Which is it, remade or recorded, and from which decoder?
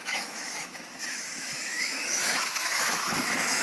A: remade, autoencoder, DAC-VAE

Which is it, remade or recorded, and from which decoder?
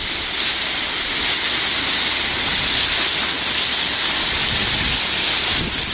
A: recorded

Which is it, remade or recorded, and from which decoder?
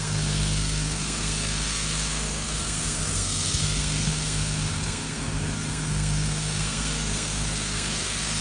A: remade, codec, SNAC